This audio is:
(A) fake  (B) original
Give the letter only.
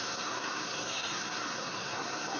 A